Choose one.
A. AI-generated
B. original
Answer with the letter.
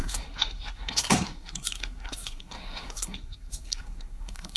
A